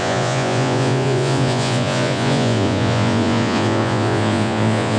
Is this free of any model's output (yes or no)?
no